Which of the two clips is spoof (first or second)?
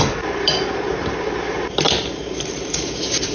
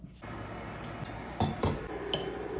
first